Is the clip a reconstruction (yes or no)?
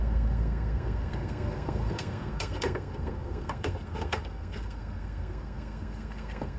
yes